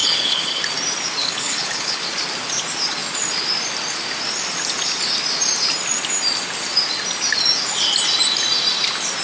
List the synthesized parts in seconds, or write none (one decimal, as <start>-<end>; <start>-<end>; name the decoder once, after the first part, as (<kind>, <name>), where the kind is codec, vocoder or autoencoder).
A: 0.0-0.6 (codec, HILCodec); 1.2-2.0